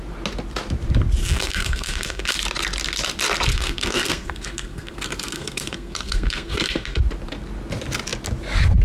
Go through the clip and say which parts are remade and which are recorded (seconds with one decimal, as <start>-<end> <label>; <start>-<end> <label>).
0.0-1.2 recorded; 1.2-2.3 remade; 2.3-3.5 recorded; 3.5-7.0 remade; 7.0-8.8 recorded